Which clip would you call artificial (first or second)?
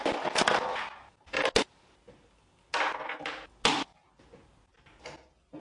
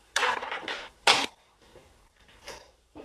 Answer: second